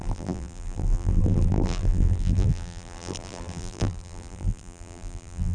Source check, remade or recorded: remade